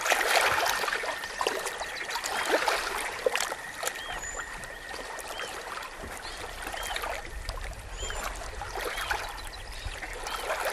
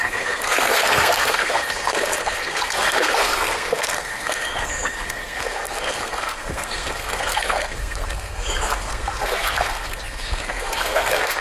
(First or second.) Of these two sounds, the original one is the first